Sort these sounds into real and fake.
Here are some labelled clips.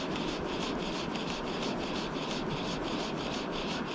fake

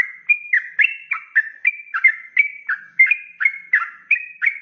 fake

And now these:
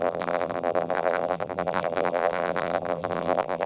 fake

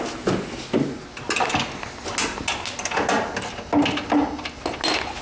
real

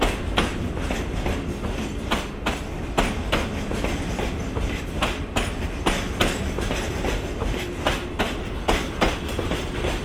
real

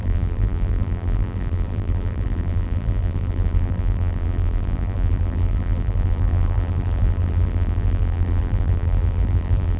fake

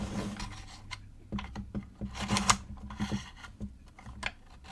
real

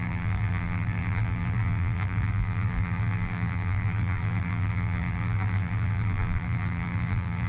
fake